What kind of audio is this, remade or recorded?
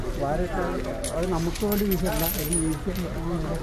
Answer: recorded